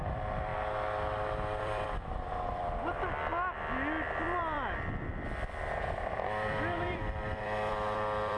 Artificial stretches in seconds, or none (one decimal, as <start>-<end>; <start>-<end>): 0.0-0.5; 1.6-3.3; 4.4-8.4